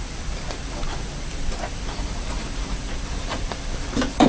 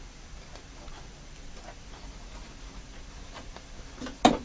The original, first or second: second